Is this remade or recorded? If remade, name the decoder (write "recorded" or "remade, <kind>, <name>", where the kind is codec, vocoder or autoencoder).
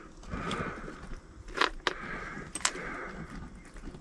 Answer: recorded